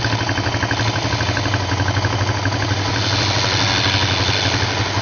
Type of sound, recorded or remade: recorded